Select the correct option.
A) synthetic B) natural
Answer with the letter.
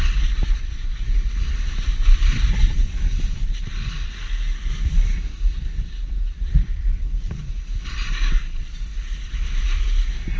B